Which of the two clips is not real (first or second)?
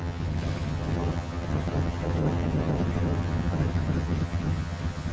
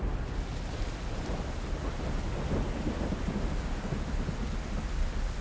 first